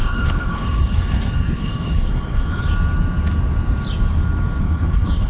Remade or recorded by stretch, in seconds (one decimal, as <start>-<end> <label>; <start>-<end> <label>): 0.0-2.7 remade; 2.7-4.6 recorded; 4.6-5.3 remade